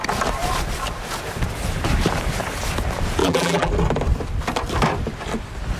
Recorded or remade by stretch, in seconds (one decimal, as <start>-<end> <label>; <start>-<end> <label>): 0.0-3.2 recorded; 3.2-3.7 remade; 3.7-5.8 recorded